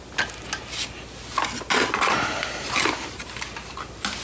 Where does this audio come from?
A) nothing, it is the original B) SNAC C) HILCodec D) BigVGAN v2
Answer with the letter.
A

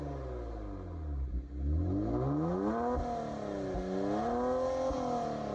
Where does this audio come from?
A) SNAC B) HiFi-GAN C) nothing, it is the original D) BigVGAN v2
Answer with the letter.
C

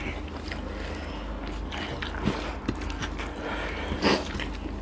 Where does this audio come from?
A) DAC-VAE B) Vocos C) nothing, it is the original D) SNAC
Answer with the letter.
C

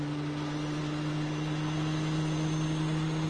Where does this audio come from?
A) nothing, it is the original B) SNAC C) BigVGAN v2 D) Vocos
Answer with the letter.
A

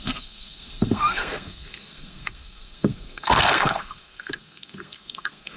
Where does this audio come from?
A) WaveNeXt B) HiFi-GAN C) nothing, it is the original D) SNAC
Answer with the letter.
D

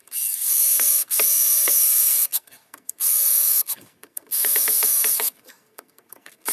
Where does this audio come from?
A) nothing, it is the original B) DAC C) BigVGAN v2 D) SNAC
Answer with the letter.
D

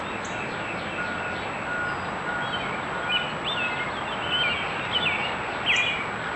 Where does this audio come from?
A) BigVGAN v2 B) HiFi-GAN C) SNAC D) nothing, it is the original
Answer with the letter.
D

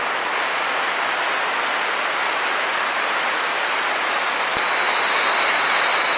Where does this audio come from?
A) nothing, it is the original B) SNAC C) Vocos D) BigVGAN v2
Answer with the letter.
A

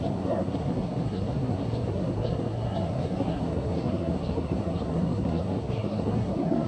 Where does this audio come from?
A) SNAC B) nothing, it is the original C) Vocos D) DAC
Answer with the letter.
A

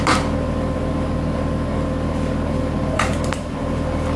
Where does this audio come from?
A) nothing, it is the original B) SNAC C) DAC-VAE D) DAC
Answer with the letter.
A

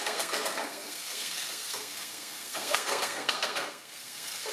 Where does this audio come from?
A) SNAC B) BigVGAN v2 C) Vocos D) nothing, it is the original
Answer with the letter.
A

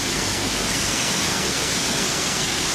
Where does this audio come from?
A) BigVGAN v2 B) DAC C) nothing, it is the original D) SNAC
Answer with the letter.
D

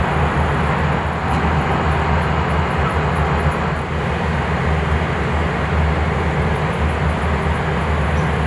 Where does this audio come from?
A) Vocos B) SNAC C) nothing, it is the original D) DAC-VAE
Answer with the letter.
C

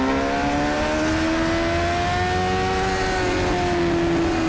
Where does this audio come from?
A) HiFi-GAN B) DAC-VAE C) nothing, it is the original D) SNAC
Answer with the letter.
C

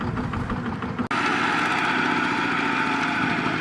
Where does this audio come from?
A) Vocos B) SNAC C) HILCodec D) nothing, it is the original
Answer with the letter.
D